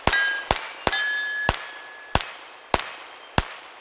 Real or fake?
real